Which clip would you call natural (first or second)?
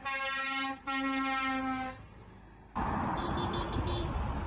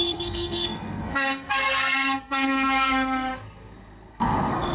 first